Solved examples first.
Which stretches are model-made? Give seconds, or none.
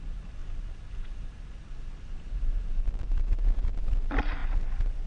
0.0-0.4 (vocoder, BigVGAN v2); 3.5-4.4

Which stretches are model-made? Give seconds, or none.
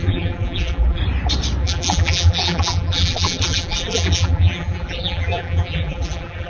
0.0-1.0 (vocoder, BigVGAN v2); 1.6-6.5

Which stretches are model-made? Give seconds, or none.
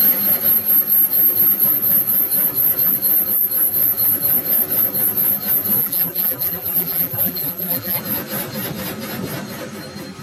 5.8-8.0 (vocoder, BigVGAN v2)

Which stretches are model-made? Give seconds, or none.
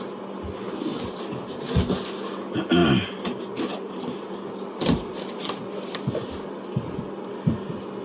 0.9-1.6 (vocoder, BigVGAN v2); 2.8-4.0; 4.8-5.4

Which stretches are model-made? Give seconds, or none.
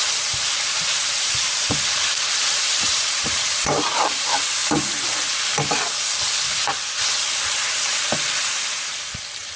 0.0-4.6 (vocoder, BigVGAN v2); 7.5-9.6